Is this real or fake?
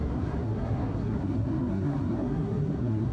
fake